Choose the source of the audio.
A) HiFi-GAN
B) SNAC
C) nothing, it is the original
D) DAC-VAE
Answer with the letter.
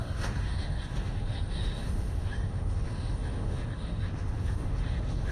D